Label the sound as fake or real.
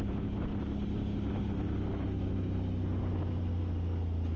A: real